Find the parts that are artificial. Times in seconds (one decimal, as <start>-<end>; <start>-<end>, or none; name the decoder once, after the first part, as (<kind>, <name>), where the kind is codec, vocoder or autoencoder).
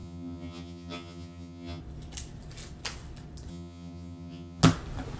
0.0-1.8 (vocoder, HiFi-GAN); 3.5-4.6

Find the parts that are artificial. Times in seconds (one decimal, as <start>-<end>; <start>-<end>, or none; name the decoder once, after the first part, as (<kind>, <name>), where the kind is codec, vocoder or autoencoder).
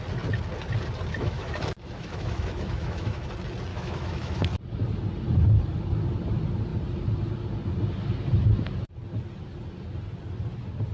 1.2-3.3 (autoencoder, DAC-VAE); 3.7-4.4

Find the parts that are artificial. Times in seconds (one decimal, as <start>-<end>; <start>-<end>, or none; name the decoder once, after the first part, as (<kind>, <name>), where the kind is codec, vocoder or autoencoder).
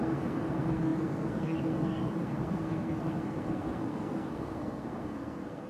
0.0-5.7 (codec, SNAC)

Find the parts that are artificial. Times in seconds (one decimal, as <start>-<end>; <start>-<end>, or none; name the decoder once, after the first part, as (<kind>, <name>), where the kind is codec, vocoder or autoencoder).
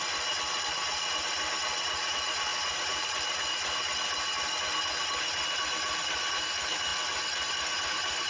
none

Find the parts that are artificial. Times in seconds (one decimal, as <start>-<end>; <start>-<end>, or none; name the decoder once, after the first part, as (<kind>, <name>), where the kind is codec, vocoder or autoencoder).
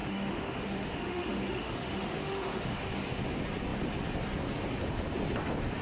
0.0-2.9 (autoencoder, DAC-VAE)